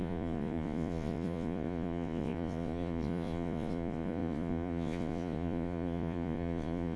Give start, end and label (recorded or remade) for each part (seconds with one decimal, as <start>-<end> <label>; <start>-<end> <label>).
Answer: 0.0-7.0 remade